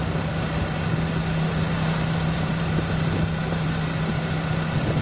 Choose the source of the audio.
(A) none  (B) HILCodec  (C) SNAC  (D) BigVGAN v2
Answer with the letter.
A